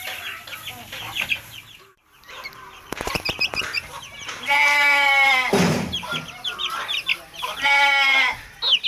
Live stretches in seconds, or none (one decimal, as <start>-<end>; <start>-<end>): 0.0-1.8; 7.1-8.9